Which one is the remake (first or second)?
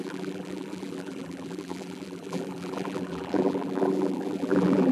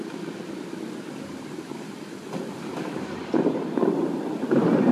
first